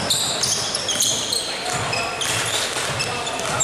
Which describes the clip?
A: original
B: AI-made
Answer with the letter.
A